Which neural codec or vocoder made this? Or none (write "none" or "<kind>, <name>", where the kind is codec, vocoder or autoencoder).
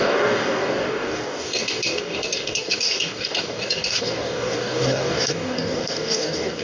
codec, DAC